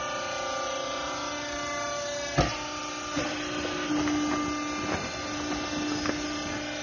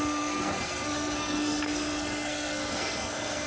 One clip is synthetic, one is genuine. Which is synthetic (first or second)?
second